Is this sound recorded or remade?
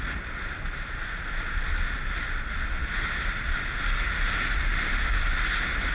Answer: recorded